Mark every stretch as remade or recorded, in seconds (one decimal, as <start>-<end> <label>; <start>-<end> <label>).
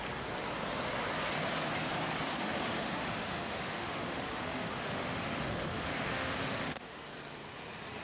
0.0-2.3 recorded; 2.3-7.1 remade; 7.1-8.0 recorded